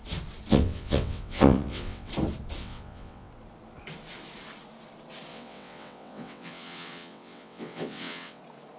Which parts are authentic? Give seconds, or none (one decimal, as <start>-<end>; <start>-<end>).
0.0-0.5; 2.1-2.6; 3.3-5.3; 8.4-8.8